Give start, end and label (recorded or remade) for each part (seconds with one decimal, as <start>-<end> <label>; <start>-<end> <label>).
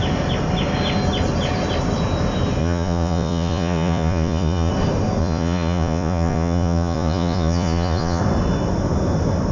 0.0-2.6 recorded; 2.6-4.7 remade; 4.7-5.2 recorded; 5.2-8.2 remade; 8.2-9.5 recorded